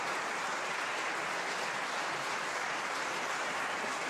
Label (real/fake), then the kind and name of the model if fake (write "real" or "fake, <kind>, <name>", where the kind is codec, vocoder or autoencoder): real